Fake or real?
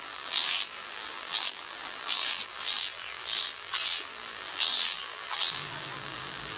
fake